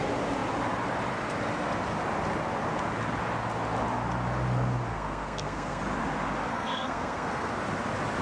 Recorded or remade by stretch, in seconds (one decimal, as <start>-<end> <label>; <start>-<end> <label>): 0.0-4.9 recorded; 4.9-5.8 remade; 5.8-6.5 recorded; 6.5-7.5 remade; 7.5-8.2 recorded